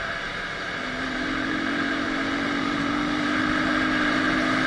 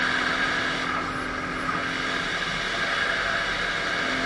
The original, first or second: second